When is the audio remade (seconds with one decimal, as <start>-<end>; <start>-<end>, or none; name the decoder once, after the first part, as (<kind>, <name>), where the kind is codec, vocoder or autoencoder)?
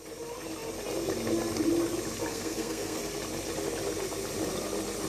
2.3-3.0 (codec, SNAC)